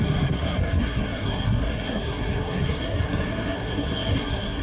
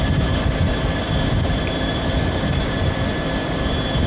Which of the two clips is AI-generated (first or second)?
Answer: first